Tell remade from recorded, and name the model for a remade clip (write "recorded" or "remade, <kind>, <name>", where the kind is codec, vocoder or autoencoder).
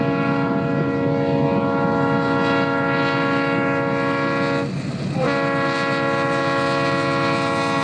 recorded